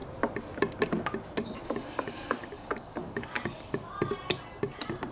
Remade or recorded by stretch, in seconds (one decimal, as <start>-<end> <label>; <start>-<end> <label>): 0.0-1.6 recorded; 1.6-3.8 remade; 3.8-5.1 recorded